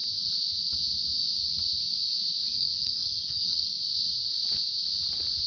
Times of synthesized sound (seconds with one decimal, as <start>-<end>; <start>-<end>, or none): 2.5-3.8